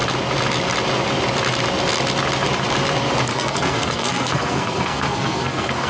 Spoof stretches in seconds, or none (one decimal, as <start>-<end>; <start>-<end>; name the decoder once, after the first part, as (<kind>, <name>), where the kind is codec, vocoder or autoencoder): 3.3-5.9 (codec, SNAC)